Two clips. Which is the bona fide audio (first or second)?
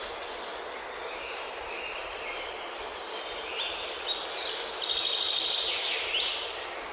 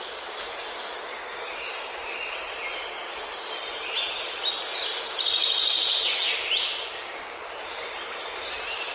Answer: second